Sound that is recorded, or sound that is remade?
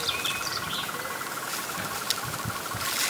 recorded